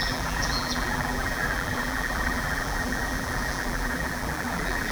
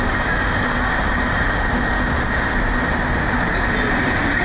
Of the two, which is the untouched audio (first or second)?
second